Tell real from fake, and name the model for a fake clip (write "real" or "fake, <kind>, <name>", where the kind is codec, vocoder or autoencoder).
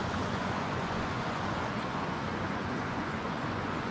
fake, vocoder, Vocos